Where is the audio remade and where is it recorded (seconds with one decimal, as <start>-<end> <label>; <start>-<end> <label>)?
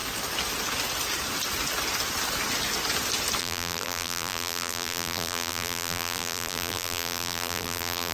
0.0-3.4 recorded; 3.4-8.1 remade